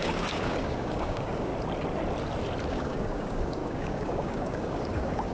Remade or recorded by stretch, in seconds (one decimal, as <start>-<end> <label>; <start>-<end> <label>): 0.0-1.5 remade; 1.5-2.7 recorded; 2.7-5.3 remade